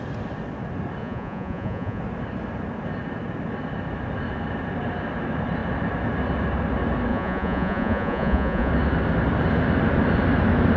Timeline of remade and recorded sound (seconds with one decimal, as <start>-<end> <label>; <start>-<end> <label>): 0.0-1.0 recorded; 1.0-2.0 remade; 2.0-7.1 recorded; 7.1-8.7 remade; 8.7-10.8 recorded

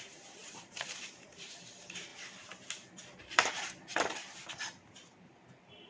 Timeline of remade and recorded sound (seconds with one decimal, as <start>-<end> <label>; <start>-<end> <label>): 0.0-2.1 remade; 2.1-3.2 recorded; 3.2-5.9 remade

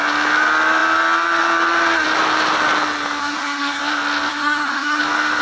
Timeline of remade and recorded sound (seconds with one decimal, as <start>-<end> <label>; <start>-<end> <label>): 0.0-3.2 recorded; 3.2-3.8 remade; 3.8-4.3 recorded; 4.3-5.0 remade; 5.0-5.4 recorded

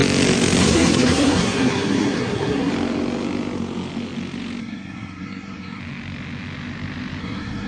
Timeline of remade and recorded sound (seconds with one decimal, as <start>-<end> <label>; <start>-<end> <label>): 0.0-0.6 recorded; 0.6-2.7 remade; 2.7-4.6 recorded; 4.6-5.8 remade; 5.8-7.2 recorded; 7.2-7.7 remade